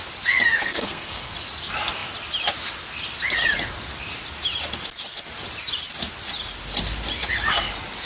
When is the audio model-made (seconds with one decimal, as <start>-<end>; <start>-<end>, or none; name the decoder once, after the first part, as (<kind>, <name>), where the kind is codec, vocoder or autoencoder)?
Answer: 0.6-1.3 (codec, SNAC)